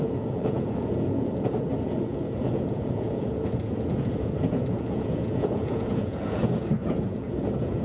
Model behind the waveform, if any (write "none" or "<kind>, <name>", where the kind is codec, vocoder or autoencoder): vocoder, Vocos